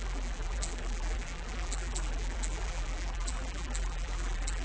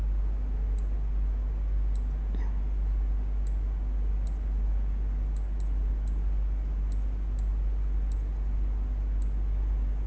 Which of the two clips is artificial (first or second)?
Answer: first